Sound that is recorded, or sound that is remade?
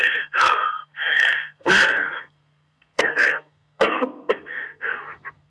remade